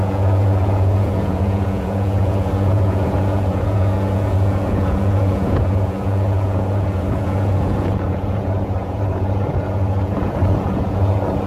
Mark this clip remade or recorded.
remade